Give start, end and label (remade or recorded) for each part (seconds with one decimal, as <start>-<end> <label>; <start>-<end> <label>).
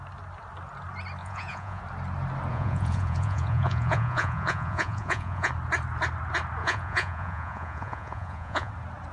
0.0-1.2 recorded; 1.2-1.8 remade; 1.8-2.5 recorded; 2.5-5.5 remade; 5.5-6.6 recorded; 6.6-8.7 remade; 8.7-9.1 recorded